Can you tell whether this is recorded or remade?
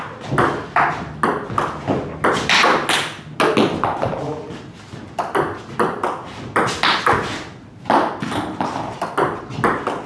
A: recorded